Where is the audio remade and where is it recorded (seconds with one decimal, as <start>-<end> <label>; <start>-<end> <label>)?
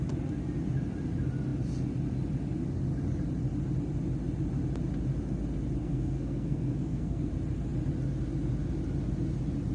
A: 0.0-5.8 recorded; 5.8-7.3 remade; 7.3-9.7 recorded